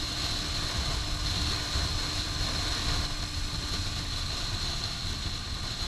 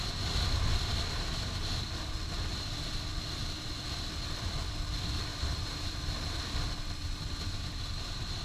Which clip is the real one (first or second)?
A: first